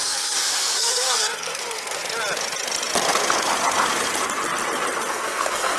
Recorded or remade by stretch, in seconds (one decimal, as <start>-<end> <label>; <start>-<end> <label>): 0.0-2.0 remade; 2.0-5.1 recorded; 5.1-5.8 remade